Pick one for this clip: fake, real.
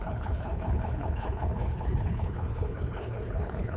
fake